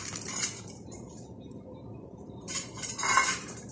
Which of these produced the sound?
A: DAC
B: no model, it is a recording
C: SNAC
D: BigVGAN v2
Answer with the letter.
D